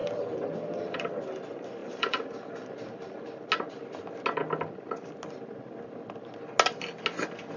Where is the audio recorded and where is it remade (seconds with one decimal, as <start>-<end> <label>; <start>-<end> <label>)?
0.0-1.1 remade; 1.1-1.8 recorded; 1.8-3.5 remade; 3.5-7.6 recorded